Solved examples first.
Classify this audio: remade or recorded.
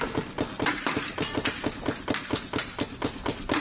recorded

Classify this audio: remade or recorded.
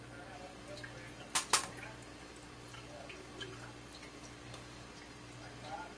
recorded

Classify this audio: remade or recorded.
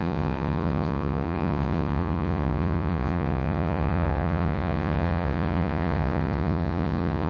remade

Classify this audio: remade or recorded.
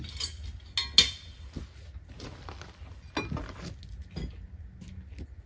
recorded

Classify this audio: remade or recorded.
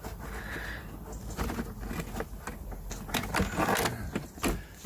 recorded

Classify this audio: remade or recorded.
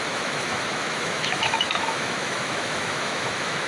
remade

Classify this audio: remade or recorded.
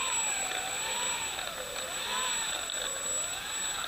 recorded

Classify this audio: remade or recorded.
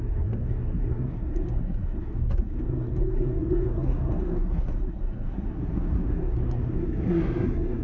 remade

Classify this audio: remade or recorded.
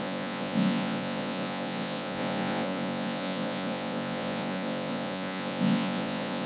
remade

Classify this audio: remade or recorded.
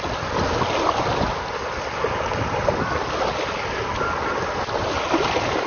recorded